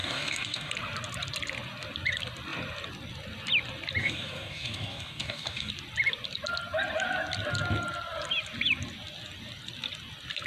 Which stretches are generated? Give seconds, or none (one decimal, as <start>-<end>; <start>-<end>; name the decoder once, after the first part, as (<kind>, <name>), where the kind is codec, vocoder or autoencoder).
0.0-0.7 (codec, DAC); 4.0-5.7